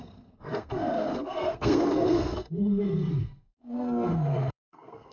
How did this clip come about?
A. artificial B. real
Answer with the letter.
A